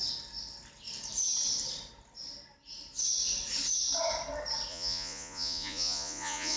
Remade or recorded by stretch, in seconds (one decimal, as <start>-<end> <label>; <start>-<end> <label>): 0.0-4.7 recorded; 4.7-6.6 remade